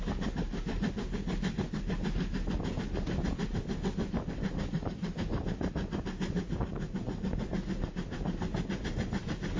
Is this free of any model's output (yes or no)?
yes